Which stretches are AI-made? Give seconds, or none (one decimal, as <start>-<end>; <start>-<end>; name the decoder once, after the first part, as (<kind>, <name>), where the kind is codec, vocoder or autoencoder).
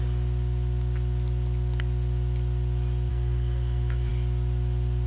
3.1-4.1 (codec, SNAC)